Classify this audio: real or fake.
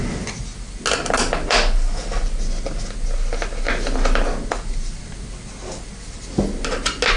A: real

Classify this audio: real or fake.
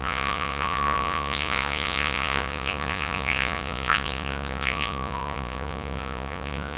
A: fake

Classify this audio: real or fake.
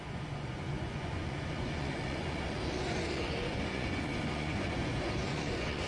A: fake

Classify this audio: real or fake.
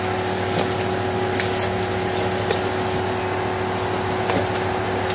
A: real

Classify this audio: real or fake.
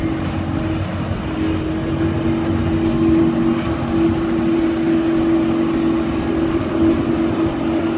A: real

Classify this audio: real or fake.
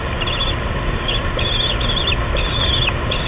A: real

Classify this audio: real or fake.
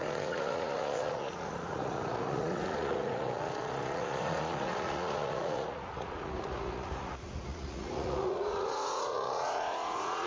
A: fake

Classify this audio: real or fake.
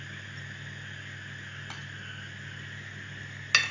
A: real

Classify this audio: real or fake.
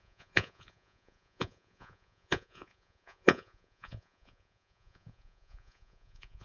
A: fake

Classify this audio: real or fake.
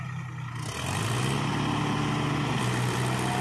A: real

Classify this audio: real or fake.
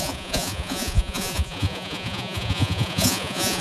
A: fake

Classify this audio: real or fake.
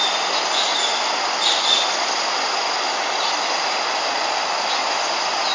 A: real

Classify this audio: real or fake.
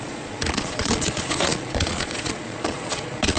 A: fake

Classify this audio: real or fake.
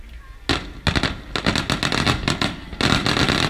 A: real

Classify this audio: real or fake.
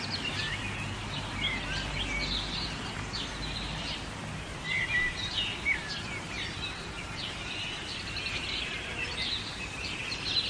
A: real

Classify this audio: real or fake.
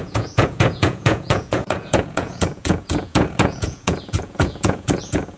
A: fake